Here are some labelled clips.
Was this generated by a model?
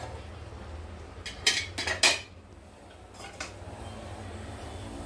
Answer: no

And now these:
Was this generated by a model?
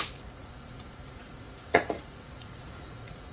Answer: yes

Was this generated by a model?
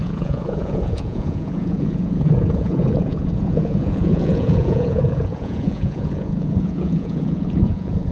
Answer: yes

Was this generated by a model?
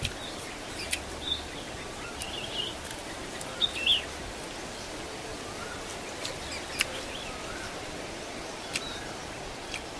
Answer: no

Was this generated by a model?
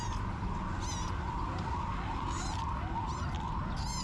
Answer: no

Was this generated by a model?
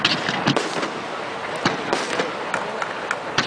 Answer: no